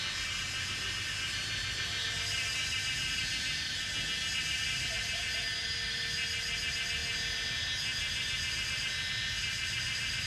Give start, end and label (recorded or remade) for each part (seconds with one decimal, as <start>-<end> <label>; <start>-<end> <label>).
0.0-10.3 recorded